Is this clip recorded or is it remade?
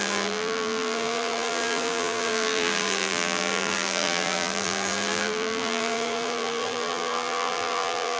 remade